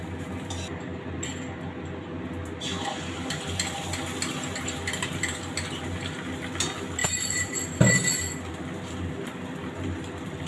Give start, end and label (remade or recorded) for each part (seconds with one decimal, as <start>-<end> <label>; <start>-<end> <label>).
0.0-7.0 recorded; 7.0-10.5 remade